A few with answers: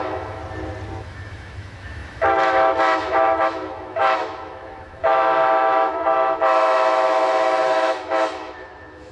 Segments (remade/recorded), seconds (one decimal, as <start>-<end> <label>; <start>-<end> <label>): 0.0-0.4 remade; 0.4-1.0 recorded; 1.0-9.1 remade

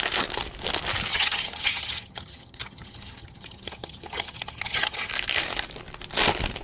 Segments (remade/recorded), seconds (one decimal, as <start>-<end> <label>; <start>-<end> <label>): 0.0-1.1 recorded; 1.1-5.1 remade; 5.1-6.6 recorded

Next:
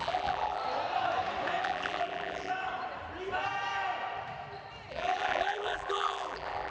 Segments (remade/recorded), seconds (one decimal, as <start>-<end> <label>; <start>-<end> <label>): 0.0-0.6 remade; 0.6-1.6 recorded; 1.6-2.5 remade; 2.5-4.9 recorded; 4.9-6.7 remade

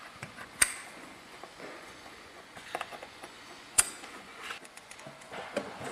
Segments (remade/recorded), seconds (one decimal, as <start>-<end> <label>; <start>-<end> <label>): 0.0-5.9 remade